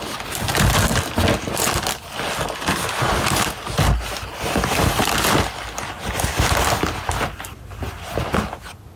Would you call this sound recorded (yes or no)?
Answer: yes